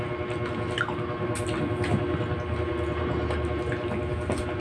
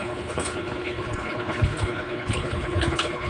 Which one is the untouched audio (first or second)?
first